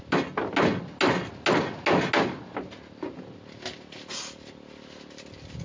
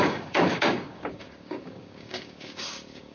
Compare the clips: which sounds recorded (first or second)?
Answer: first